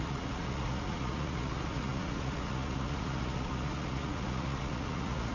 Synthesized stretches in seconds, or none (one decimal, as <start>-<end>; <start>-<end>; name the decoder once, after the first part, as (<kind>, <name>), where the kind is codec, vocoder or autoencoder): 0.0-5.3 (vocoder, Vocos)